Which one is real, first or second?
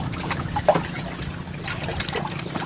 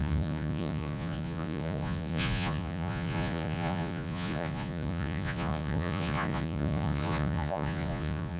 first